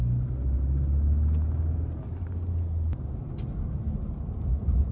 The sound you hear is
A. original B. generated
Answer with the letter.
A